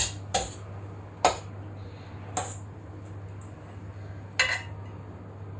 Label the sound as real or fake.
real